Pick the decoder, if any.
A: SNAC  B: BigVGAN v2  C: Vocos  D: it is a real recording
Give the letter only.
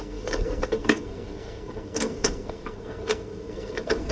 A